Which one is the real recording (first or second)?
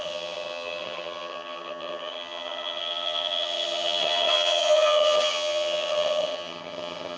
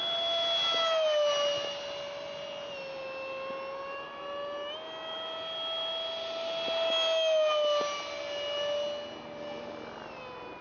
second